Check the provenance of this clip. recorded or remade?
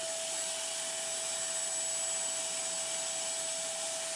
recorded